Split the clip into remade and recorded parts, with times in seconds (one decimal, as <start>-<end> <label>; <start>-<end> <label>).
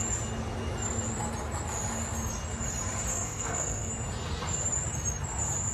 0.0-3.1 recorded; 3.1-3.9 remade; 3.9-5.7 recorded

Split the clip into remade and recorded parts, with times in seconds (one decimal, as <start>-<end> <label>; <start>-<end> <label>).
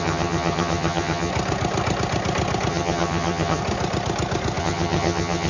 0.0-1.3 remade; 1.3-2.7 recorded; 2.7-3.6 remade; 3.6-4.6 recorded; 4.6-5.5 remade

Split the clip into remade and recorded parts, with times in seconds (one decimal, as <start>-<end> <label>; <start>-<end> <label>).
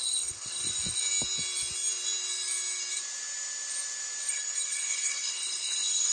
0.0-0.6 remade; 0.6-4.3 recorded; 4.3-6.1 remade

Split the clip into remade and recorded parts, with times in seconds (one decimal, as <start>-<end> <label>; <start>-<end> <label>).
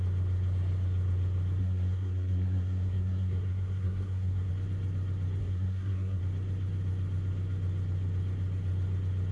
0.0-1.6 recorded; 1.6-4.5 remade; 4.5-5.4 recorded; 5.4-6.2 remade; 6.2-9.3 recorded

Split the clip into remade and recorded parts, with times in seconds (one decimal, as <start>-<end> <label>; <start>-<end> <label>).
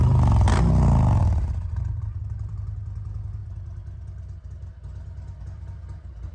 0.0-1.2 recorded; 1.2-2.5 remade; 2.5-6.3 recorded